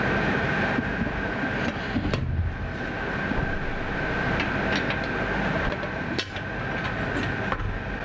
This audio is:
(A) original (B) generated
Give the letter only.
A